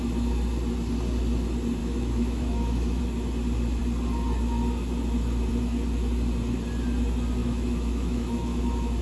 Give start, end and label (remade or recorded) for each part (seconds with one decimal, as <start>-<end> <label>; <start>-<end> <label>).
0.0-1.8 recorded; 1.8-3.0 remade; 3.0-7.4 recorded; 7.4-8.6 remade; 8.6-9.0 recorded